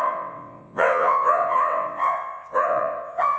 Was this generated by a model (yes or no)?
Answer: yes